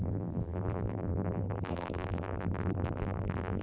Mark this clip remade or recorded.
remade